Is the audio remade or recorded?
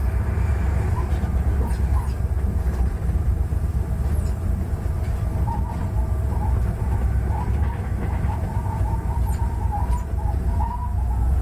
remade